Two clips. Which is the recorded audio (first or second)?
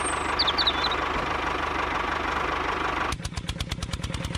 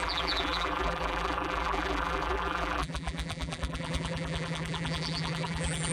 first